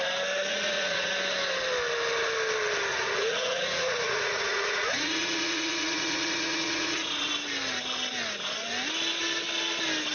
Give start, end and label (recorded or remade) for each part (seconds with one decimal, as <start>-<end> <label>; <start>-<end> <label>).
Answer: 0.0-0.5 recorded; 0.5-1.1 remade; 1.1-2.9 recorded; 2.9-7.3 remade; 7.3-10.1 recorded

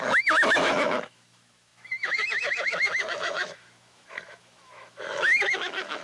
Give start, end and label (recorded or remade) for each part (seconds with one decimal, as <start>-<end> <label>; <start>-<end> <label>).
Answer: 0.0-6.0 remade

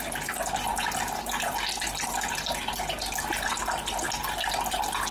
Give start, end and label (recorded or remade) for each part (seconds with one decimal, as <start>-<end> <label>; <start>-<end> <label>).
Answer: 0.0-5.1 recorded

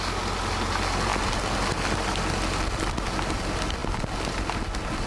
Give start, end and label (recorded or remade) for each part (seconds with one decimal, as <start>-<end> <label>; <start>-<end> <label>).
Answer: 0.0-5.1 recorded

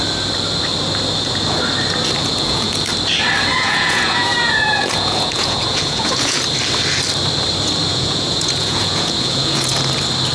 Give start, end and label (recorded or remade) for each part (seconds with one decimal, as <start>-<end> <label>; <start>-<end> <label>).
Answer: 0.0-2.2 recorded; 2.2-2.8 remade; 2.8-3.5 recorded; 3.5-6.4 remade; 6.4-7.9 recorded; 7.9-9.9 remade; 9.9-10.3 recorded